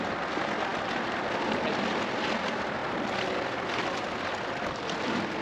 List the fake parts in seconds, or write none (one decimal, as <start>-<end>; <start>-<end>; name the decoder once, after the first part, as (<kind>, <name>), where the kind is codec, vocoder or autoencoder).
none